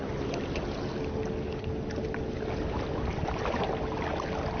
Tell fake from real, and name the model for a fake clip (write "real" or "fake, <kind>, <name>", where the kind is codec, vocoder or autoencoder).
real